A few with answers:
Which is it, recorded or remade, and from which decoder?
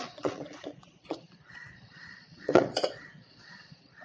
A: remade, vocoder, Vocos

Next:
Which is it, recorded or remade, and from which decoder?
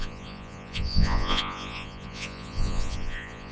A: remade, vocoder, Vocos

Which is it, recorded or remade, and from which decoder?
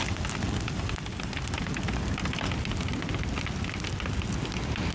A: recorded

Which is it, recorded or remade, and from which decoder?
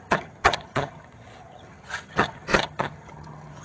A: remade, vocoder, HiFi-GAN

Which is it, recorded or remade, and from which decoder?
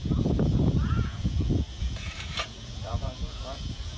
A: remade, vocoder, Vocos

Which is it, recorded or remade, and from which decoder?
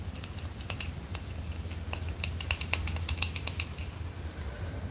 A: recorded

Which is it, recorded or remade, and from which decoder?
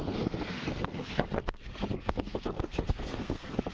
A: remade, codec, SNAC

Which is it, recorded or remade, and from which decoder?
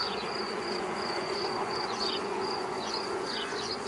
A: remade, vocoder, Vocos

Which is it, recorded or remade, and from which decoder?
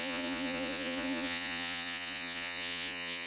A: remade, vocoder, Vocos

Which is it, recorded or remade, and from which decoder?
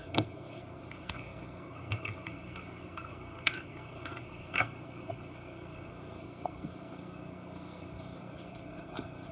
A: remade, codec, SNAC